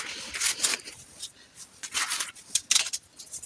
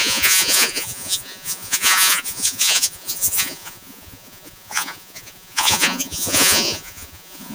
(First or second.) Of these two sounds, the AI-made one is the second